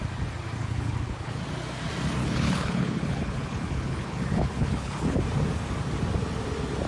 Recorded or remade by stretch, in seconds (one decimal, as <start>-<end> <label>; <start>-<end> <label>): 0.0-0.6 recorded; 0.6-1.4 remade; 1.4-2.2 recorded; 2.2-5.2 remade; 5.2-6.9 recorded